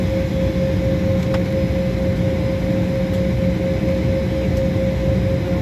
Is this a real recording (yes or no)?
yes